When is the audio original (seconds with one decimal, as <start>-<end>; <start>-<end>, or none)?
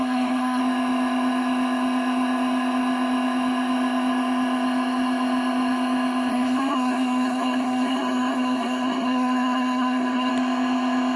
0.6-6.3; 10.3-11.2